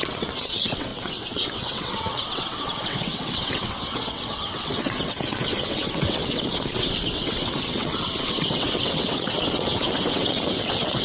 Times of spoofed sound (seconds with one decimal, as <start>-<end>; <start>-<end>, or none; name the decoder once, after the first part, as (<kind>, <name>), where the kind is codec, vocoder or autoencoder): 0.0-11.0 (vocoder, WaveNeXt)